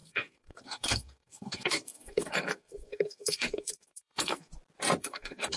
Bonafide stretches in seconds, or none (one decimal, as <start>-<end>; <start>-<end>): 4.5-5.0